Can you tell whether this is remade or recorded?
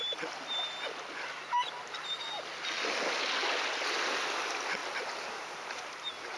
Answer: recorded